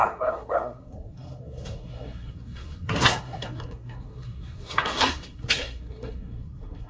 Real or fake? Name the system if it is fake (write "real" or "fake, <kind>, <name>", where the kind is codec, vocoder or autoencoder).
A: fake, codec, SNAC